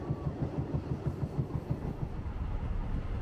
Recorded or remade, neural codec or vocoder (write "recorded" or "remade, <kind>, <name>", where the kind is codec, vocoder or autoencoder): recorded